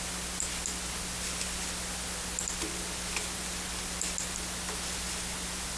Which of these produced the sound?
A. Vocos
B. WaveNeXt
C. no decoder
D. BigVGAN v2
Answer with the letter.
C